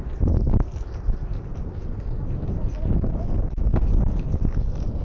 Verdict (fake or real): real